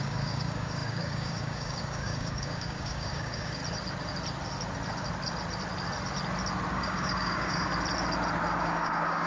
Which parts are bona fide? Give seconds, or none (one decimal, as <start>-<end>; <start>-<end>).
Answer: 3.6-6.7; 7.7-8.6